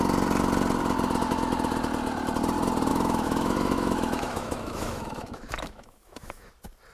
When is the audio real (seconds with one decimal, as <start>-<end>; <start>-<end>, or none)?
0.0-2.9; 6.5-6.9